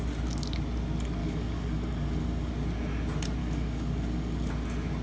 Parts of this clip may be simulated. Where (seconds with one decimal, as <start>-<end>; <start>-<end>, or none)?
1.2-2.5; 3.4-4.5